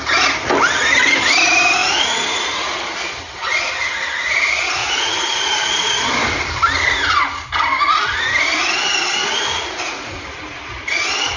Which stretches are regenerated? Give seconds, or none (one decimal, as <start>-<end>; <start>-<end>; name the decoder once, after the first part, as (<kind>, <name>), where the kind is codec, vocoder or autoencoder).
1.8-2.4 (vocoder, Vocos); 4.8-5.9; 9.2-10.9